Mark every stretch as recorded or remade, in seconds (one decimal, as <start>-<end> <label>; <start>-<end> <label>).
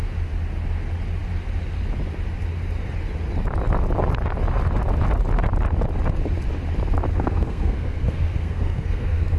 0.0-7.1 recorded; 7.1-9.4 remade